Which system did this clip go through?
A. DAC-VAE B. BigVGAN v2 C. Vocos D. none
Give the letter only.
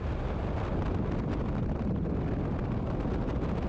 D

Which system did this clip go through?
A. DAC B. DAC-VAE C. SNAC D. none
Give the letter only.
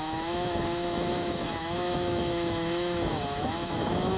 B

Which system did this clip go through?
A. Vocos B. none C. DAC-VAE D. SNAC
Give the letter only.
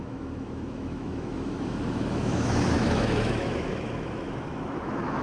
C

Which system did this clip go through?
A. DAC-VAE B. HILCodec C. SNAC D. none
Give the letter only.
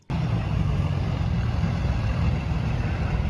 D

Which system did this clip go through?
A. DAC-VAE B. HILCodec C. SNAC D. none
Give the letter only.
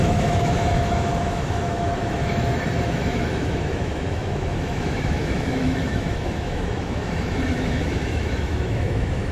A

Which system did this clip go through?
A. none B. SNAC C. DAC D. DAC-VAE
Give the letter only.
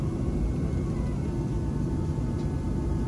A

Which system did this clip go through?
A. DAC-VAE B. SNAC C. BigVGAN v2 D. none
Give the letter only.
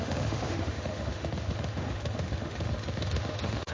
A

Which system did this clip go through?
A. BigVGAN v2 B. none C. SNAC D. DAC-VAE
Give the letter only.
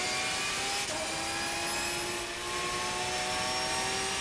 B